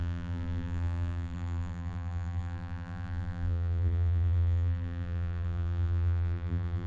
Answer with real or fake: fake